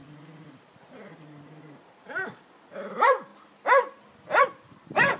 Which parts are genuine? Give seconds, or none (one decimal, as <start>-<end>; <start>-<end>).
3.3-4.4